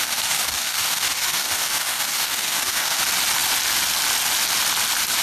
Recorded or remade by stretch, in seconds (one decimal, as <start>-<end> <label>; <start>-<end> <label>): 0.0-3.0 remade; 3.0-5.2 recorded